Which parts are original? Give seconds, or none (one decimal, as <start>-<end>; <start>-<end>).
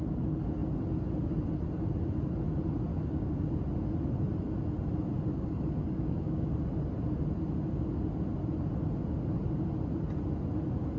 0.0-2.9; 3.6-5.3; 6.5-11.0